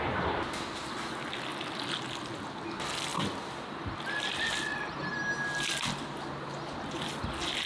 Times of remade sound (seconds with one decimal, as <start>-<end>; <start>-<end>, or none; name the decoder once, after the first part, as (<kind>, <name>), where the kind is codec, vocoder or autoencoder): none